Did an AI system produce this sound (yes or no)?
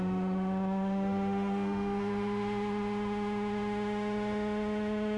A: yes